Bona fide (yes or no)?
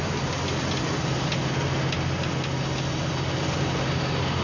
yes